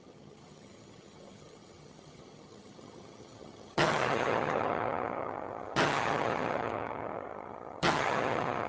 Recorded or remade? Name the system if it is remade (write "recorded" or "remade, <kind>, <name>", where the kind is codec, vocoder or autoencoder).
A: remade, vocoder, HiFi-GAN